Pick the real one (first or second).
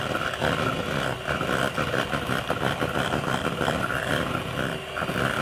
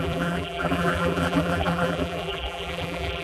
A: first